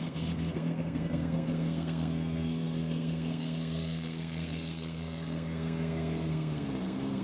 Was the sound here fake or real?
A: fake